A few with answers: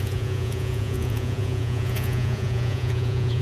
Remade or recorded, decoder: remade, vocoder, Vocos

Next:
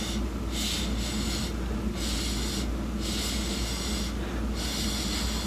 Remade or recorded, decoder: recorded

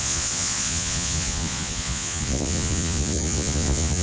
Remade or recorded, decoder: remade, vocoder, Vocos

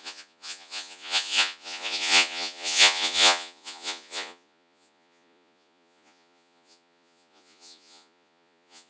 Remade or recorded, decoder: remade, vocoder, Vocos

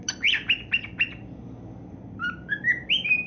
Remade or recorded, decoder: recorded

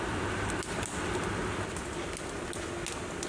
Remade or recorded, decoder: recorded